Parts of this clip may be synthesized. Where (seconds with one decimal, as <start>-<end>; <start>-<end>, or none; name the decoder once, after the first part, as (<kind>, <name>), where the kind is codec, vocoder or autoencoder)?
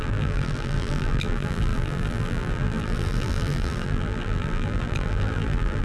0.0-5.8 (vocoder, BigVGAN v2)